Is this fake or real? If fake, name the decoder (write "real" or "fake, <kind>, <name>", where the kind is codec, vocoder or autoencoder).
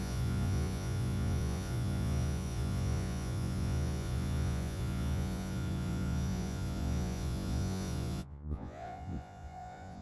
fake, vocoder, Vocos